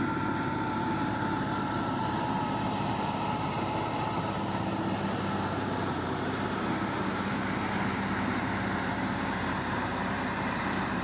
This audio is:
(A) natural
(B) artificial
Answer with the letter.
B